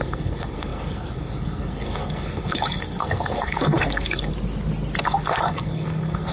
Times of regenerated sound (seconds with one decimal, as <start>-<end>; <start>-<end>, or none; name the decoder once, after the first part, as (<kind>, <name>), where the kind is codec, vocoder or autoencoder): 0.0-4.3 (codec, SNAC); 5.0-6.3